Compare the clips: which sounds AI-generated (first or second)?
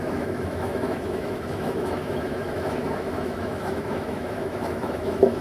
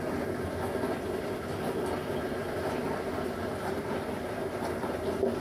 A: first